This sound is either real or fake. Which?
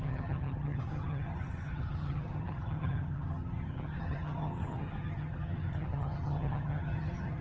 fake